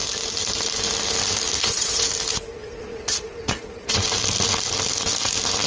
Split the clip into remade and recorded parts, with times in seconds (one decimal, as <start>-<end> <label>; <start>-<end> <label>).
0.0-1.6 recorded; 1.6-2.1 remade; 2.1-2.5 recorded; 2.5-4.0 remade; 4.0-5.7 recorded